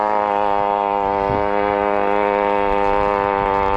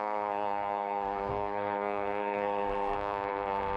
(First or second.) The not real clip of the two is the second